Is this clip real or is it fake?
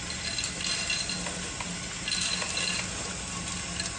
real